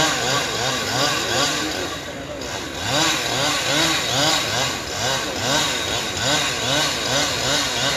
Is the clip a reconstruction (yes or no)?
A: no